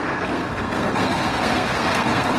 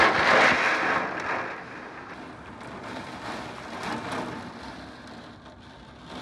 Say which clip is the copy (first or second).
first